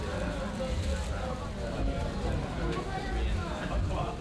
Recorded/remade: recorded